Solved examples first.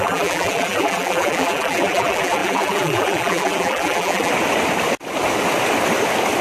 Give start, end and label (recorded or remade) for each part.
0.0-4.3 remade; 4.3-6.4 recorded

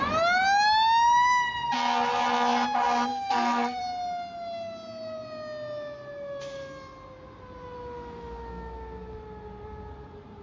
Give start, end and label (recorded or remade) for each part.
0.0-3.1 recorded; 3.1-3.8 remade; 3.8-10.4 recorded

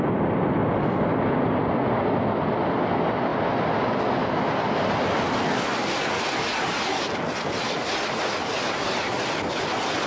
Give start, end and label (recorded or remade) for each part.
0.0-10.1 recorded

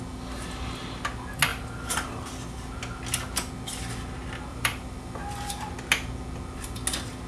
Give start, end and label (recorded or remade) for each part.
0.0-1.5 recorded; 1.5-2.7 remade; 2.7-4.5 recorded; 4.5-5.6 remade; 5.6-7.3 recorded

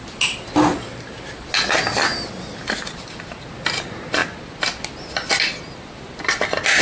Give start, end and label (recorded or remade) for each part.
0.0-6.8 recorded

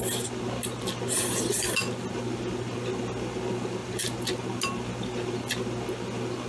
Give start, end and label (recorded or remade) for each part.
0.0-6.5 recorded